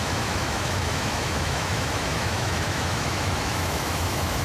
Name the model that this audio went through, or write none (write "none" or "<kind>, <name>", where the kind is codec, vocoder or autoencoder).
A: autoencoder, DAC-VAE